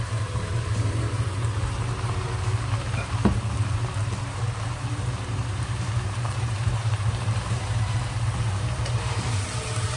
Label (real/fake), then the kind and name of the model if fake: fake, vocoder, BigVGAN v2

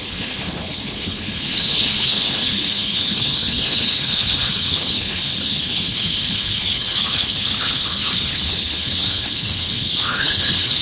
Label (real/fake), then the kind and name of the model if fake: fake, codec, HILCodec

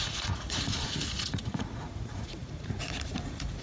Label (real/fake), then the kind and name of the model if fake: fake, vocoder, Vocos